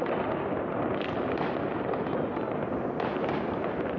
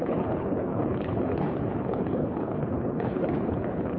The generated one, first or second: second